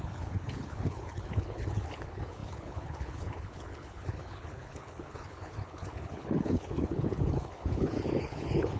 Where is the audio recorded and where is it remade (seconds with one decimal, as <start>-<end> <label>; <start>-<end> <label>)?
0.0-8.8 remade

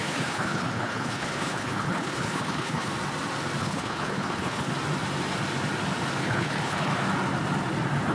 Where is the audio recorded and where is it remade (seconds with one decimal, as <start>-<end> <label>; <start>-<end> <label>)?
0.0-2.9 remade; 2.9-3.6 recorded; 3.6-4.7 remade; 4.7-6.2 recorded; 6.2-6.9 remade; 6.9-8.1 recorded

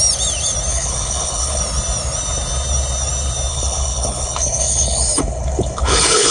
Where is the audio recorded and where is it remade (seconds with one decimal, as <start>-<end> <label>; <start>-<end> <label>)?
0.0-0.7 recorded; 0.7-1.6 remade; 1.6-3.5 recorded; 3.5-6.3 remade